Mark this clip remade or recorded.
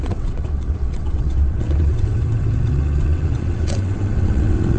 remade